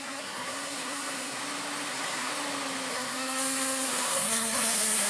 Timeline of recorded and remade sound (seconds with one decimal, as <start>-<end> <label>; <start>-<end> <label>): 0.0-1.4 remade; 1.4-1.9 recorded; 1.9-2.3 remade; 2.3-2.9 recorded; 2.9-5.1 remade

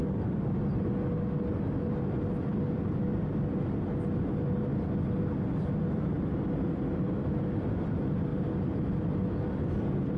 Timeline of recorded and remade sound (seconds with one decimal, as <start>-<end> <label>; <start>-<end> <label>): 0.0-10.2 recorded

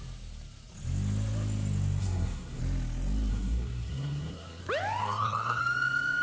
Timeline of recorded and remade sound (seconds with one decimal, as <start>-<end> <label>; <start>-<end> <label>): 0.0-2.0 recorded; 2.0-2.6 remade; 2.6-3.3 recorded; 3.3-4.6 remade; 4.6-5.0 recorded; 5.0-5.6 remade; 5.6-6.2 recorded